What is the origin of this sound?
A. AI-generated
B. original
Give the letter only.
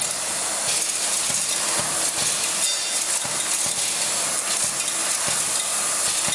B